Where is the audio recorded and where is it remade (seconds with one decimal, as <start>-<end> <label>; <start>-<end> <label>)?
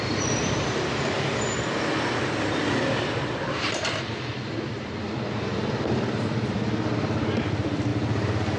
0.0-7.9 remade; 7.9-8.6 recorded